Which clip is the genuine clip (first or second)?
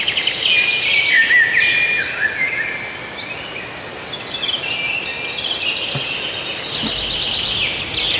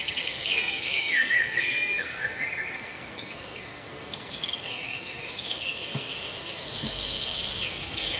first